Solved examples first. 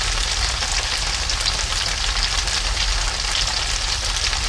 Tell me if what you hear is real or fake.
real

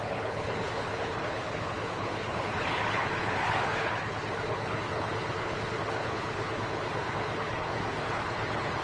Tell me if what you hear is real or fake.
fake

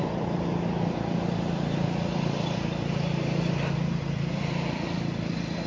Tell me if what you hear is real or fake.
real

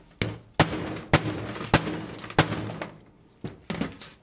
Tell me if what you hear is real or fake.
real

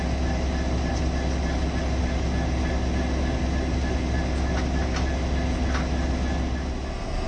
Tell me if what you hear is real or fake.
real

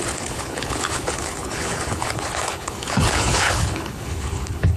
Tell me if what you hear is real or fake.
fake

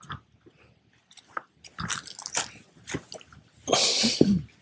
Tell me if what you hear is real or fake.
real